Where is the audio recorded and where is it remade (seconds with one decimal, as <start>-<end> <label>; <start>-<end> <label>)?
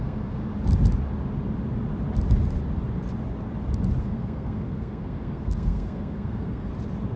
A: 0.0-0.4 remade; 0.4-4.0 recorded; 4.0-6.7 remade; 6.7-7.2 recorded